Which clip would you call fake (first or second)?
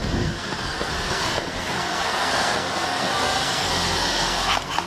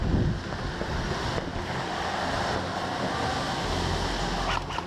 first